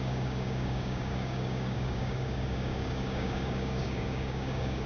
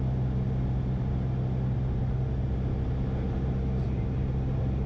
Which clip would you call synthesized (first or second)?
first